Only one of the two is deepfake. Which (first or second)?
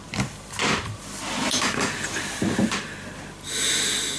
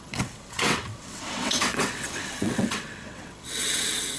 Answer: second